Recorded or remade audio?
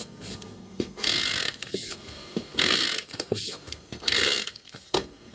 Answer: remade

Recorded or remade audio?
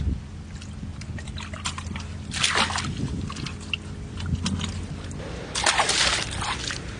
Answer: recorded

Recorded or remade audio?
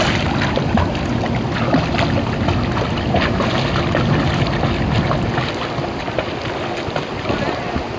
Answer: recorded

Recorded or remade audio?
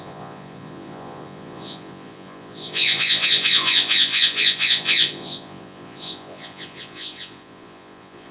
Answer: remade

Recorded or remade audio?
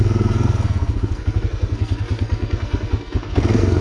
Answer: remade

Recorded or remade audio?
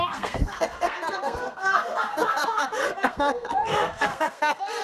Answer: remade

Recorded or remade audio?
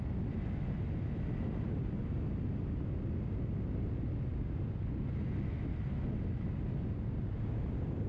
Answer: recorded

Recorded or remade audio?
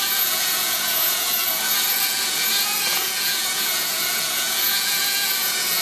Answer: remade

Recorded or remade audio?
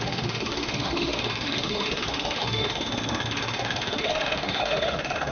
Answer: remade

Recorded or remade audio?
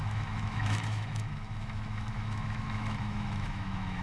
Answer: remade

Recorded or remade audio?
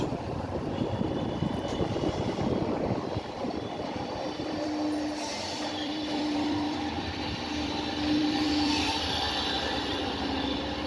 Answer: remade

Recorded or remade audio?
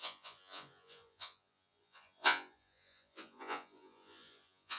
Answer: remade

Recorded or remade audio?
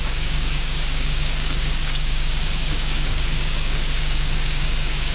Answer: remade